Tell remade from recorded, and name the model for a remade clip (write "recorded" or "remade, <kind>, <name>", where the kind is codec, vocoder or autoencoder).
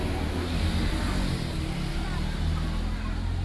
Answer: recorded